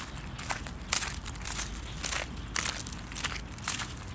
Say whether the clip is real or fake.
real